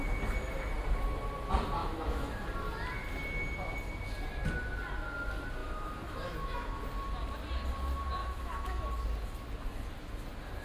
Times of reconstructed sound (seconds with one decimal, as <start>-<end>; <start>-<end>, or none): 1.8-2.5; 5.6-6.8; 8.2-8.8